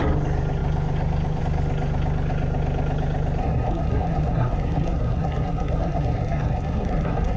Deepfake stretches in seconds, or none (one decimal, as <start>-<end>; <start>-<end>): 3.4-7.4